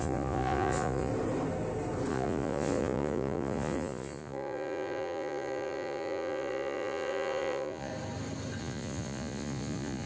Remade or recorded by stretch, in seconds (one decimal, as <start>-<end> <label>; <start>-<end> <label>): 0.0-1.1 remade; 1.1-2.1 recorded; 2.1-7.9 remade; 7.9-8.6 recorded; 8.6-10.1 remade